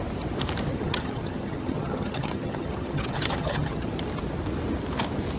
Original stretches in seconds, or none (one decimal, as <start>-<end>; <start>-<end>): 0.0-0.7; 3.9-5.4